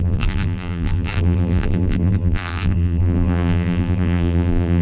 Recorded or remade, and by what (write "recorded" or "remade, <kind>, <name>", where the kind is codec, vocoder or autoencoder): remade, vocoder, BigVGAN v2